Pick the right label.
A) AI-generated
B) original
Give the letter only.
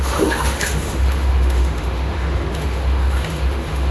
A